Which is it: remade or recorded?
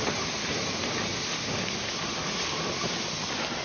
recorded